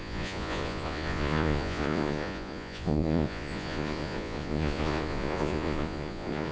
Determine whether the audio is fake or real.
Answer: fake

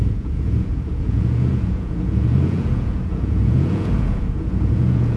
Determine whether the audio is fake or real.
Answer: fake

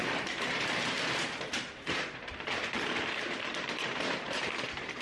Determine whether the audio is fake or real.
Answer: fake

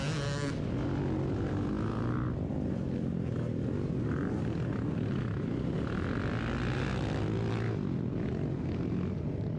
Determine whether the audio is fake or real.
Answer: real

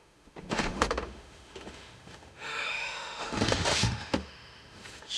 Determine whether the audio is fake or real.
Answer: fake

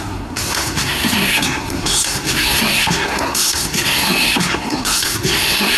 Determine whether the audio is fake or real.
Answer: fake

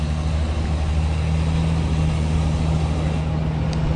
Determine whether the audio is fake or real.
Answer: fake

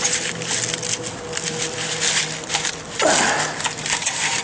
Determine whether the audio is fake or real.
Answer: real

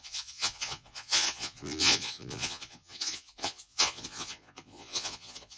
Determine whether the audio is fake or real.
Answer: fake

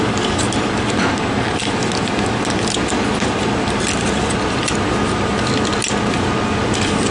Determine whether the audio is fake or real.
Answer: real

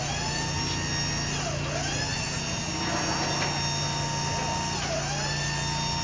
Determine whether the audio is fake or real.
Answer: real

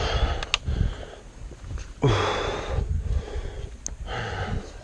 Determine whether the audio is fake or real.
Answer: real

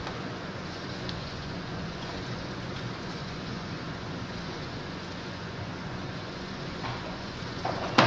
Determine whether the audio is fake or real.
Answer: fake